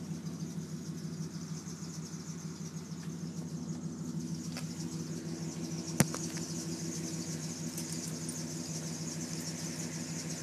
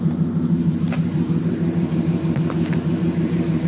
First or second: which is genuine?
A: first